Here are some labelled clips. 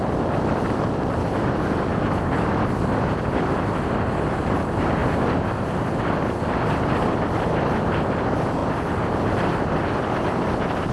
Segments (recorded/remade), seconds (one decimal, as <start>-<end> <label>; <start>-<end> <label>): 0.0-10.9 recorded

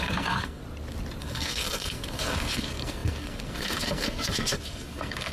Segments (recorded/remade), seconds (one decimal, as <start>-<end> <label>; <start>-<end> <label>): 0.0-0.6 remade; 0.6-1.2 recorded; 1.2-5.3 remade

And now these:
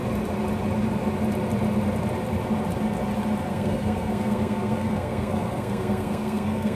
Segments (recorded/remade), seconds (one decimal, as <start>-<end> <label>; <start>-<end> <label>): 0.0-3.5 recorded; 3.5-6.8 remade

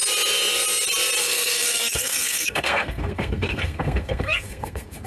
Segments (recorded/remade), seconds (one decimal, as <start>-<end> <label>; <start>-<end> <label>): 0.0-1.2 recorded; 1.2-5.1 remade

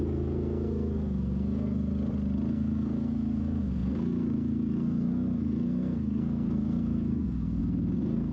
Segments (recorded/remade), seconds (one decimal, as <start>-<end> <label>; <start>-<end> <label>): 0.0-1.9 remade; 1.9-2.5 recorded; 2.5-8.3 remade

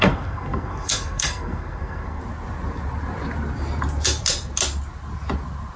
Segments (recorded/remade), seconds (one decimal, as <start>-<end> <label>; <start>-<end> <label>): 0.0-2.2 remade; 2.2-5.8 recorded